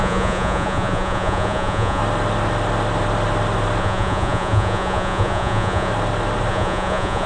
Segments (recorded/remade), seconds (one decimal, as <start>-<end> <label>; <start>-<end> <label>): 0.0-2.0 remade; 2.0-3.8 recorded; 3.8-5.9 remade; 5.9-6.5 recorded; 6.5-7.3 remade